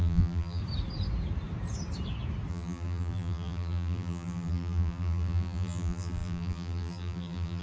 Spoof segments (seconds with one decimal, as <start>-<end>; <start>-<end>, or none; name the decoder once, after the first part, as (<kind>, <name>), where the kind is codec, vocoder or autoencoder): 0.0-0.6 (vocoder, BigVGAN v2); 2.5-7.6